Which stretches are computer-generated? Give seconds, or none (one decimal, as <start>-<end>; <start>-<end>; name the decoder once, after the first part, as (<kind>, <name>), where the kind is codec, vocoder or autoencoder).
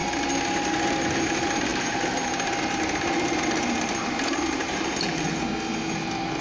1.7-5.3 (vocoder, BigVGAN v2)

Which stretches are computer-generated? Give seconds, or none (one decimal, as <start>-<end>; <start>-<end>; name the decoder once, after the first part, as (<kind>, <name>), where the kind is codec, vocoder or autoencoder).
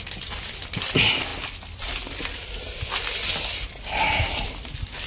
none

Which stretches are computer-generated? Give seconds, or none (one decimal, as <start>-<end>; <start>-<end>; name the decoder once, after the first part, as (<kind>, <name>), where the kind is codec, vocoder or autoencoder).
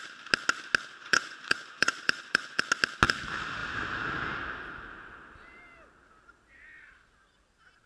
1.0-2.6 (vocoder, Vocos)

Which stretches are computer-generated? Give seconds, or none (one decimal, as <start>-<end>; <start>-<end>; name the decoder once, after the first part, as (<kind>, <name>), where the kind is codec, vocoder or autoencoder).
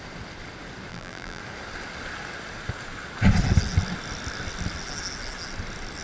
0.9-1.4 (vocoder, BigVGAN v2)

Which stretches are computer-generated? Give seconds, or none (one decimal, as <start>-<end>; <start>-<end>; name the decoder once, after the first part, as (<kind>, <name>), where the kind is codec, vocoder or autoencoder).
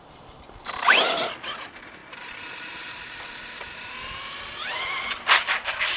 2.0-3.2 (vocoder, BigVGAN v2)